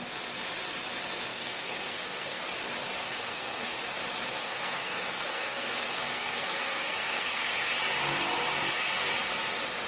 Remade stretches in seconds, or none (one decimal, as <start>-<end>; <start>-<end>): 1.3-2.4; 3.0-3.8; 4.4-7.7